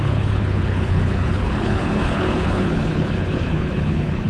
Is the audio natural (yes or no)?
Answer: no